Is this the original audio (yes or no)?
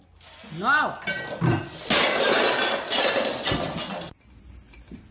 yes